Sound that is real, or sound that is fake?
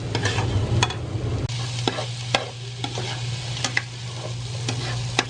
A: real